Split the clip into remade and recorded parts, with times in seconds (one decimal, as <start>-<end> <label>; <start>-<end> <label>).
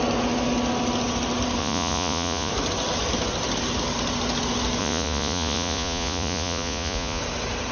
0.0-1.6 recorded; 1.6-2.5 remade; 2.5-4.8 recorded; 4.8-7.2 remade; 7.2-7.7 recorded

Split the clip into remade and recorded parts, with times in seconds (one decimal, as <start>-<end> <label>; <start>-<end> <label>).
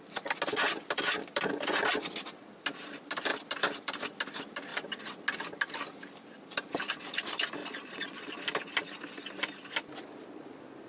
0.0-7.6 recorded; 7.6-8.3 remade; 8.3-10.9 recorded